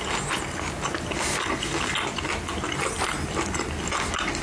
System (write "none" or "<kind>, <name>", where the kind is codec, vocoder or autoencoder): none